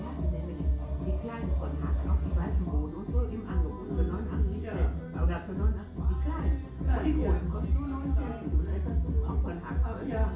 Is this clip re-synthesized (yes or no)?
no